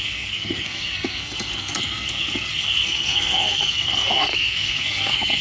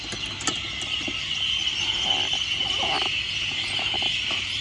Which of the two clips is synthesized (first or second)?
first